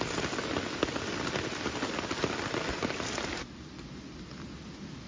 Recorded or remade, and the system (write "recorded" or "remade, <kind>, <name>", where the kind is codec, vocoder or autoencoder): recorded